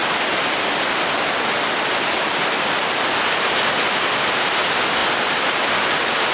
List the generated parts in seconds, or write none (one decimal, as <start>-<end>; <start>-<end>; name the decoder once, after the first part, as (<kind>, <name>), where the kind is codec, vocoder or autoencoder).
none